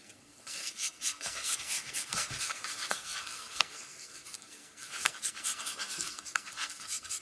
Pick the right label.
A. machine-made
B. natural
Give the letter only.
A